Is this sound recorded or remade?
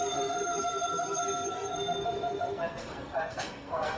remade